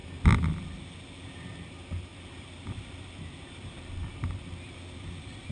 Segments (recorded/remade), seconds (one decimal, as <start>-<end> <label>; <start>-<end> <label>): 0.0-1.5 recorded; 1.5-5.5 remade